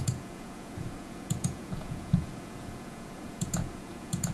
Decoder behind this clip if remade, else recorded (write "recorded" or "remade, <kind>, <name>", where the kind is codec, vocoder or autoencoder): remade, vocoder, Vocos